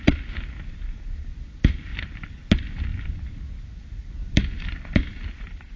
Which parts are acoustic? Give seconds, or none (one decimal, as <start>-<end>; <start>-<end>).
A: 0.0-1.9; 2.5-4.2